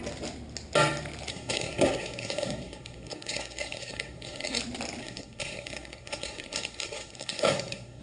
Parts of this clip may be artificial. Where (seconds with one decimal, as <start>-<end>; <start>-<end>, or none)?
1.3-4.6; 5.0-8.0